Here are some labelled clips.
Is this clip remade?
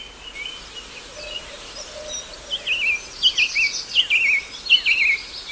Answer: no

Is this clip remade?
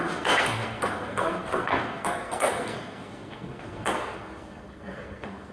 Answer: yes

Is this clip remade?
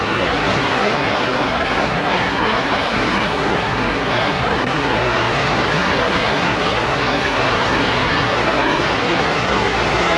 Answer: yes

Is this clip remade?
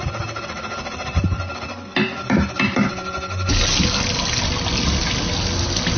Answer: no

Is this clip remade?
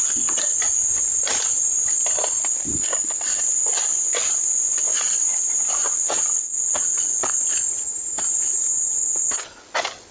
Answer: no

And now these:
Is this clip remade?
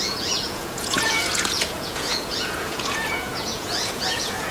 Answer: yes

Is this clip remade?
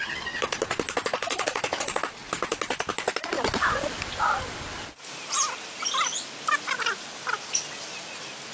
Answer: no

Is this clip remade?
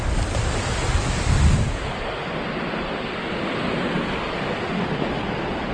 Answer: no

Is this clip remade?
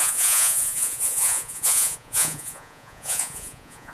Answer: yes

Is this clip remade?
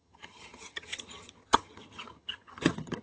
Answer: yes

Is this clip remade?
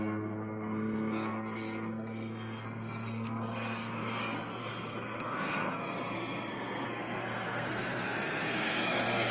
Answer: yes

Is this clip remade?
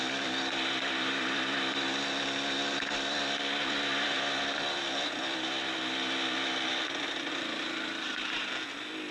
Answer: no